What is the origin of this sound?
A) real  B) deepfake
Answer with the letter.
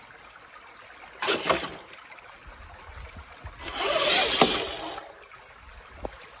A